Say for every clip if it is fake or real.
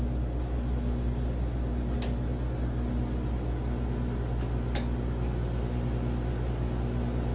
real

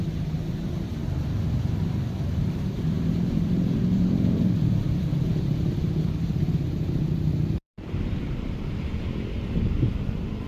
fake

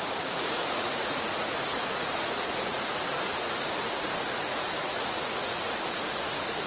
fake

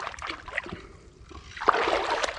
real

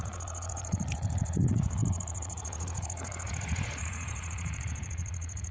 fake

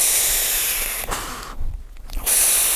real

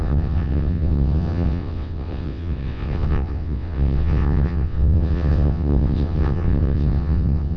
fake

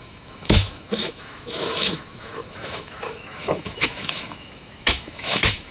fake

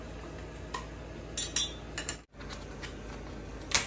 real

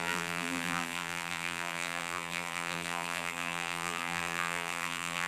fake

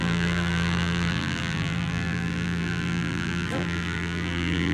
fake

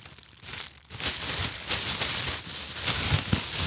real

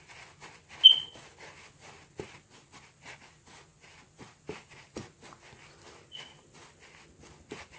real